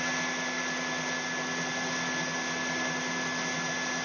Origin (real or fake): real